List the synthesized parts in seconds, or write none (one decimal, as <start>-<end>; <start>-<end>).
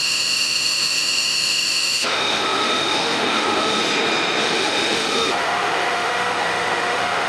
0.0-3.8; 4.4-7.3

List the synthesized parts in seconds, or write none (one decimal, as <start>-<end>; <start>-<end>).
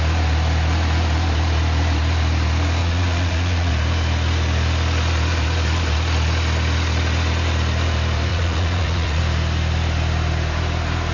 2.8-3.7; 8.3-9.2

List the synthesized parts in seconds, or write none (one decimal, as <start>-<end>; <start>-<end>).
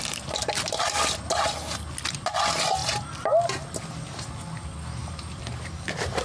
5.0-6.2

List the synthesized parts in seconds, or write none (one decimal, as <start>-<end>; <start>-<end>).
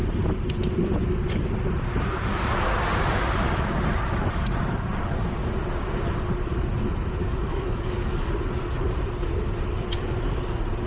7.2-8.3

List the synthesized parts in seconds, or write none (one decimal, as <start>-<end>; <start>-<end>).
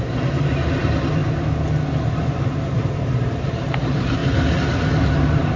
0.0-1.2; 2.2-4.2; 5.1-5.6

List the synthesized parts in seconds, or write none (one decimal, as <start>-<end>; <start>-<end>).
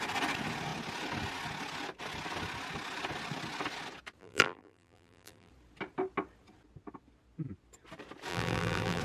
4.2-5.5; 8.3-9.0